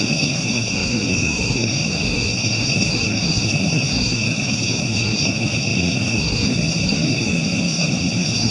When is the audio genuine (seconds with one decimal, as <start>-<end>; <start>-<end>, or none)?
none